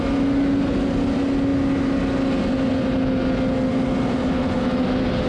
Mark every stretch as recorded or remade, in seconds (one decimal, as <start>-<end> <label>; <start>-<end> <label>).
0.0-5.3 recorded